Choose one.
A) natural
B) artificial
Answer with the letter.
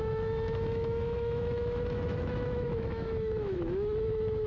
B